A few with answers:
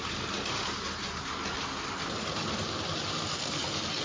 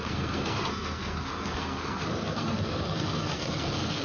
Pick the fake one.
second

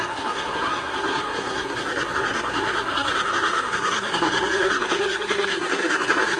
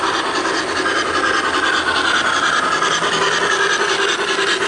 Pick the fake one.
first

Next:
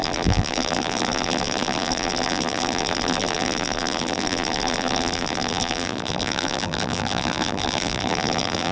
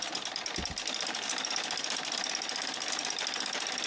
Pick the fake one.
first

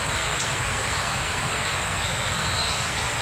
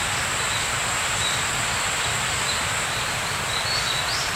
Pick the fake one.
first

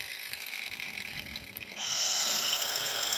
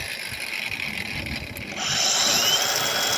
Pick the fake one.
first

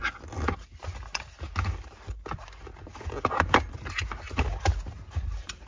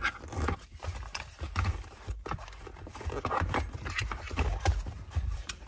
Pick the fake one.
second